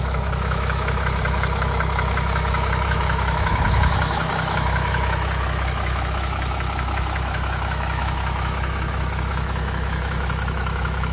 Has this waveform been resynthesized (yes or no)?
yes